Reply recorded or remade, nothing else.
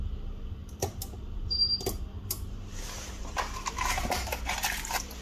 remade